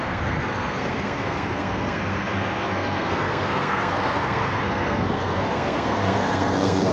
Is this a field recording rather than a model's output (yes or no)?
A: no